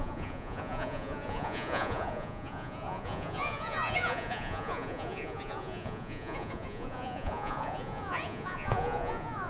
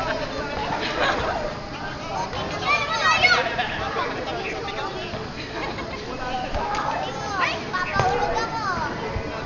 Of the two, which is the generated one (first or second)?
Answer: first